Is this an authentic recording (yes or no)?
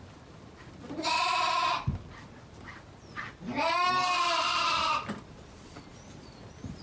yes